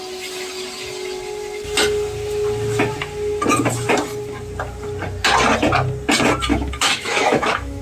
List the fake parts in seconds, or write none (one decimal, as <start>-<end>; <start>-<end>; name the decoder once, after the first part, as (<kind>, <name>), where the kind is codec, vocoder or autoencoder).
6.5-7.8 (autoencoder, DAC-VAE)